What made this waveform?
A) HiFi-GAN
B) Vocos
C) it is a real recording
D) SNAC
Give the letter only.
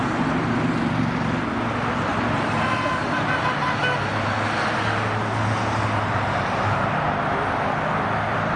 C